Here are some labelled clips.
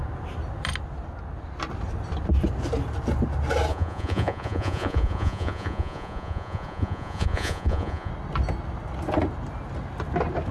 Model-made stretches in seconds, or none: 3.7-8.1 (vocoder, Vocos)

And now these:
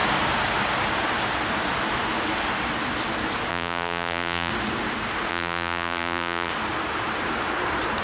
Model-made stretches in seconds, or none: 3.5-4.5 (vocoder, BigVGAN v2); 5.3-6.5

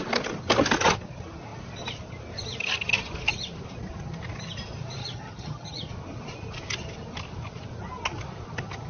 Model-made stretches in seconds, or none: 5.0-5.9 (vocoder, HiFi-GAN)

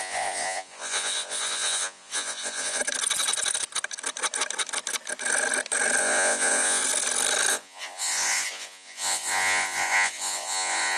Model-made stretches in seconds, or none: 0.0-2.8 (vocoder, Vocos); 6.0-6.8; 7.5-11.0